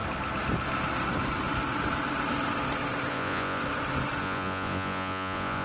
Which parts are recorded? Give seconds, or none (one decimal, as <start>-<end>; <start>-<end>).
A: 0.0-3.1; 3.6-4.2